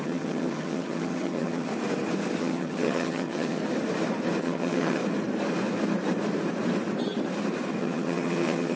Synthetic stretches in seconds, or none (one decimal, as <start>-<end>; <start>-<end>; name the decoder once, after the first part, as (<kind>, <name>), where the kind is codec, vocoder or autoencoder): 0.0-1.7 (vocoder, HiFi-GAN); 2.4-3.6; 4.4-5.0; 7.8-8.8

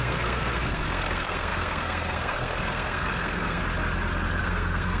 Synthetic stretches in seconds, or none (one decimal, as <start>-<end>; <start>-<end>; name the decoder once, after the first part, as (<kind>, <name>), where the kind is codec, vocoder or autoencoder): 0.0-3.6 (codec, SNAC); 4.4-5.0

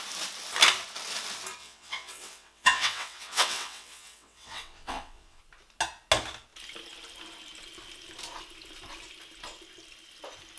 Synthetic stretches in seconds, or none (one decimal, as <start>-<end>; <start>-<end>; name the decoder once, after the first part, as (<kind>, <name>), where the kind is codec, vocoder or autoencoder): 1.6-5.4 (vocoder, WaveNeXt)

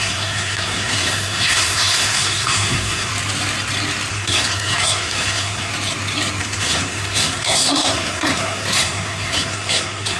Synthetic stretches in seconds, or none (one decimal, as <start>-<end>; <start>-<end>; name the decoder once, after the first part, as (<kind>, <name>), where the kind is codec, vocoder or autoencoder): 0.0-3.1 (codec, SNAC); 4.1-5.7; 6.4-10.2

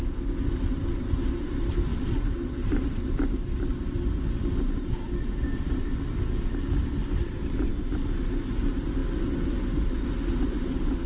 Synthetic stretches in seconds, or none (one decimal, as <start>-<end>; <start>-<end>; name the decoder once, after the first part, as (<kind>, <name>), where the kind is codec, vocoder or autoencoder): none

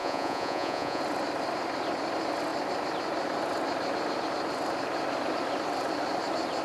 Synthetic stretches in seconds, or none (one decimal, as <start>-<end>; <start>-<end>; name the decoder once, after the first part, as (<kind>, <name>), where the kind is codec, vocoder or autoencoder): 0.0-1.0 (vocoder, Vocos)

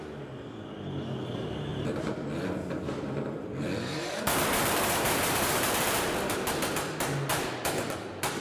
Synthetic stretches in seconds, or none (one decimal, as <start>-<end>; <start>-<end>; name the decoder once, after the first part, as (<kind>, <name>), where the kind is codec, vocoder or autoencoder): 1.7-6.5 (vocoder, BigVGAN v2); 7.3-8.4

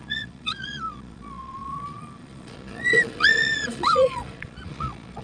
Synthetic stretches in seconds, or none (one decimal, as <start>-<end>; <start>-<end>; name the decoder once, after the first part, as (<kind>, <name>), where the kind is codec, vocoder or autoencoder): 0.0-5.2 (vocoder, Vocos)